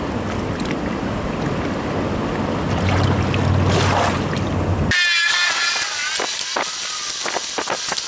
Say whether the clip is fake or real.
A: real